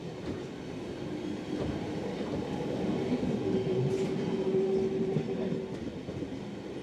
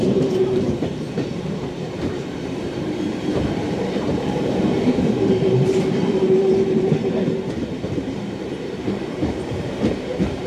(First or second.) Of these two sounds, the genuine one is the first